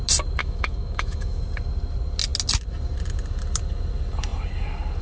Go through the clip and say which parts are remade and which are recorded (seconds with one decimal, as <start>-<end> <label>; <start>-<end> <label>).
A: 0.0-0.4 recorded; 0.4-1.4 remade; 1.4-5.0 recorded